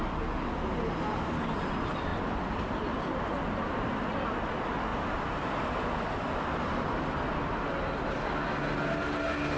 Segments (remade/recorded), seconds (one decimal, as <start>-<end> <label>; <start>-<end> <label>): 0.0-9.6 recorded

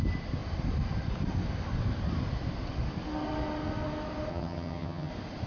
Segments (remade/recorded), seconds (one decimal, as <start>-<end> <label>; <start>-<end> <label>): 0.0-4.3 recorded; 4.3-5.1 remade; 5.1-5.5 recorded

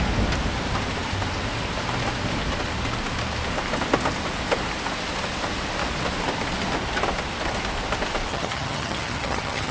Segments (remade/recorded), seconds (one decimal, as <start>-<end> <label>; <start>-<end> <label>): 0.0-8.3 recorded; 8.3-9.7 remade

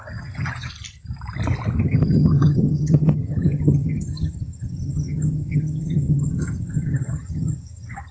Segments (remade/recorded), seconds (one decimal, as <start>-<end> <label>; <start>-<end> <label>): 0.0-0.7 remade; 0.7-1.8 recorded; 1.8-8.1 remade

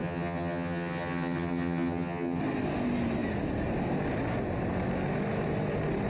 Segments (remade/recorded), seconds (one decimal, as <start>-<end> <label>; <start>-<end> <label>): 0.0-2.4 remade; 2.4-6.1 recorded